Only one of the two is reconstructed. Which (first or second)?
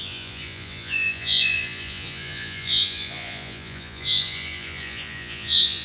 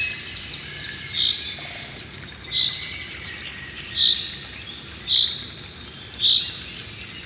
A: first